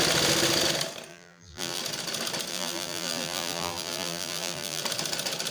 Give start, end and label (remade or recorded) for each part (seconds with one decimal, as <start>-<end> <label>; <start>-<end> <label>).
0.0-1.1 recorded; 1.1-1.8 remade; 1.8-2.5 recorded; 2.5-4.8 remade; 4.8-5.5 recorded